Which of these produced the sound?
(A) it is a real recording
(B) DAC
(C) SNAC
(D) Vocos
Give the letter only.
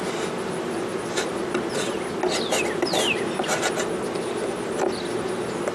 A